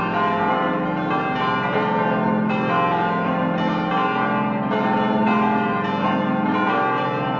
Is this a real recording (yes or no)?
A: yes